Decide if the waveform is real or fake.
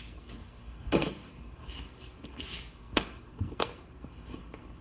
fake